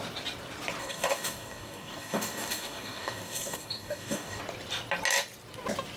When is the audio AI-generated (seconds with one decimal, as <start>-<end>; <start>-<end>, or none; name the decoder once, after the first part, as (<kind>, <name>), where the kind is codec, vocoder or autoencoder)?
0.8-4.4 (codec, DAC)